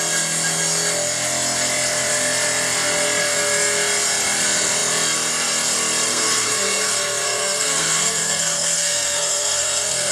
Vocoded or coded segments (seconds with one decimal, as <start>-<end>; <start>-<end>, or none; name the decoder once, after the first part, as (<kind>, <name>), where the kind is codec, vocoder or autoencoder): 6.1-10.1 (codec, SNAC)